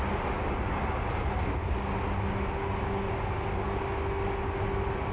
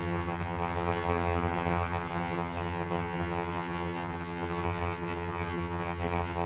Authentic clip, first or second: first